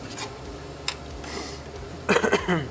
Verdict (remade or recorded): recorded